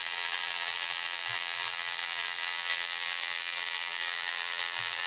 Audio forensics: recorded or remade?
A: remade